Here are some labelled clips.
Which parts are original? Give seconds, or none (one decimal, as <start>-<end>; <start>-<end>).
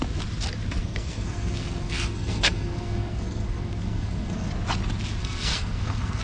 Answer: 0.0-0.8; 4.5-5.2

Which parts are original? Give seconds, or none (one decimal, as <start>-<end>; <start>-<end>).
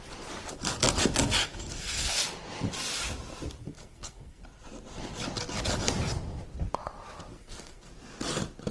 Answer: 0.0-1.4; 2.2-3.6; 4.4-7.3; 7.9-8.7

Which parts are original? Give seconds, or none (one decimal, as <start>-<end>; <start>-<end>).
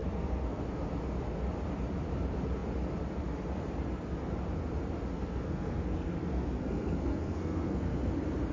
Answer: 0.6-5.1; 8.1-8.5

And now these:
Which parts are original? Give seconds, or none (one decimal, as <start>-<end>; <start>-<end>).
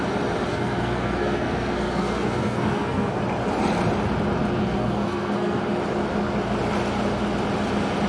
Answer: 0.0-0.5; 3.2-4.6; 5.6-8.1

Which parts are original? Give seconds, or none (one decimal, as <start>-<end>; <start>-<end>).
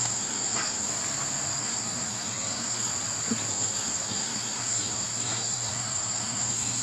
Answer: 0.9-1.6; 2.9-3.5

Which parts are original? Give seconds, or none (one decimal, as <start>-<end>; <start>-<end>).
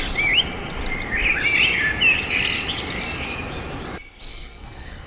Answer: 0.0-4.3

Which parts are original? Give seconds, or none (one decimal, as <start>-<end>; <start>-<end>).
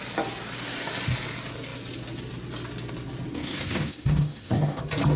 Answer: 0.0-3.3; 4.8-5.2